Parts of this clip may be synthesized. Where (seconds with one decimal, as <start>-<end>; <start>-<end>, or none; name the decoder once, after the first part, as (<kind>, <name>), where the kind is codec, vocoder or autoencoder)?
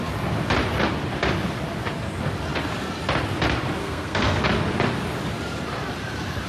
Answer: 3.8-4.4 (codec, SNAC)